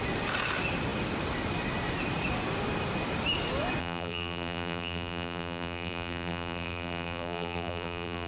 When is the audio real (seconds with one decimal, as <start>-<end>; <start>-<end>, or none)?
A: 0.0-3.8